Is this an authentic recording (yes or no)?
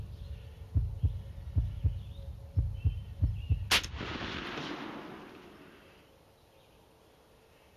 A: yes